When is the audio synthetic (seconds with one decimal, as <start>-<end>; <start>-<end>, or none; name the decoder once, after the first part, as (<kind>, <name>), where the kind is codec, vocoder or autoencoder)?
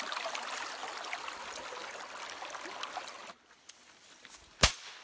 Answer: none